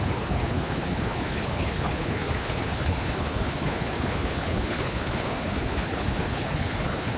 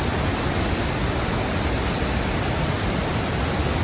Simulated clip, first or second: first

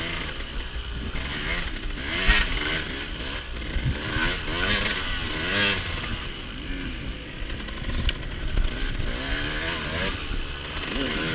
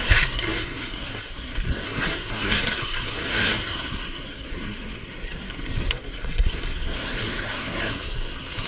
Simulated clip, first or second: second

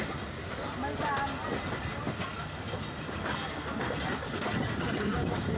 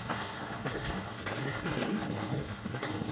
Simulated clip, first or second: second